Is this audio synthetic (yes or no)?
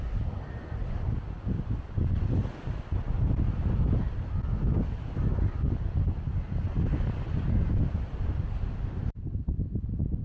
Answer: no